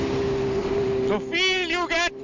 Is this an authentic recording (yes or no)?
yes